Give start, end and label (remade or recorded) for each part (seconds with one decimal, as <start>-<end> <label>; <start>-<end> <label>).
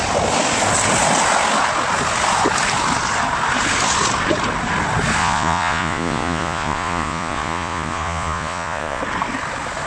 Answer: 0.0-5.2 recorded; 5.2-9.0 remade; 9.0-9.9 recorded